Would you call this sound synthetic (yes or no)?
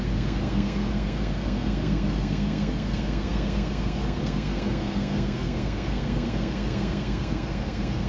yes